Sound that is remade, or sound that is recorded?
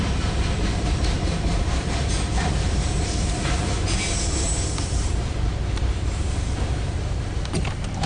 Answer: remade